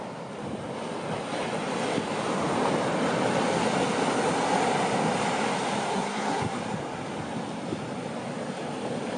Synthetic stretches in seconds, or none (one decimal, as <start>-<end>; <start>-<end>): 5.9-6.6

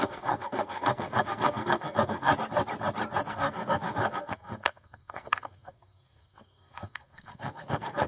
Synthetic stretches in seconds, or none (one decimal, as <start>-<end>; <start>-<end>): 0.0-2.3; 3.3-8.1

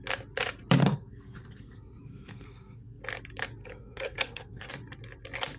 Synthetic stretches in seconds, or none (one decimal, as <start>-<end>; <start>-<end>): 0.8-3.0; 3.6-4.7

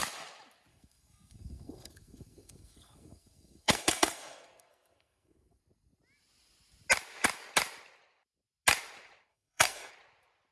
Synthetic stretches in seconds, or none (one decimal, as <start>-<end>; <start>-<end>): 0.7-5.6; 9.3-9.9

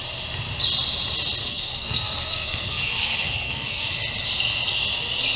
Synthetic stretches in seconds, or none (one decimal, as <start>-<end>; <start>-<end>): 1.4-3.9

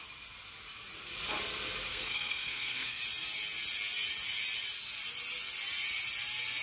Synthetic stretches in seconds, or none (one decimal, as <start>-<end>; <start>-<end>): 1.9-3.0

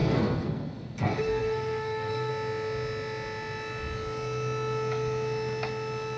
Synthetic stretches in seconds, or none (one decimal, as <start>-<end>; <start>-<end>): 0.0-2.3

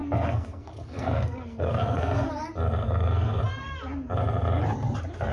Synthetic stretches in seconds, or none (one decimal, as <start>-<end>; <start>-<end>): 0.0-2.3; 2.8-3.4